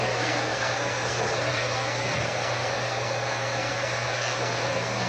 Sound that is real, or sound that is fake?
fake